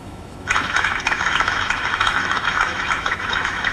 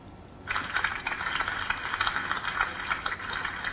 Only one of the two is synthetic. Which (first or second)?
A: first